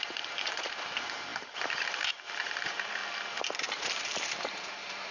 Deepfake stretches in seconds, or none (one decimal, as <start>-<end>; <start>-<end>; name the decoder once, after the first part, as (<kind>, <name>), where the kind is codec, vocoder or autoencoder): 0.0-3.0 (vocoder, BigVGAN v2); 3.6-5.1